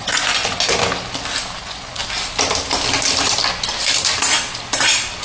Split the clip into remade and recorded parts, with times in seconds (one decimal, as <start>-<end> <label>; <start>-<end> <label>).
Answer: 0.0-0.4 remade; 0.4-1.6 recorded; 1.6-2.0 remade; 2.0-5.2 recorded